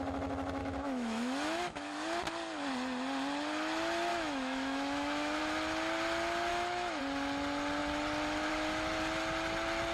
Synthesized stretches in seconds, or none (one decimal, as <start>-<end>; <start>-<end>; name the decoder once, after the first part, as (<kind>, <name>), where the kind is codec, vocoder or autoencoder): 0.6-2.2 (autoencoder, DAC-VAE); 4.1-5.4; 6.5-7.0